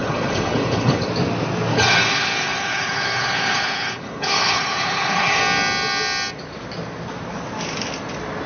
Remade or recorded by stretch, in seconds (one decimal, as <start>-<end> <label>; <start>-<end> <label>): 0.0-1.1 remade; 1.1-1.7 recorded; 1.7-5.4 remade; 5.4-8.5 recorded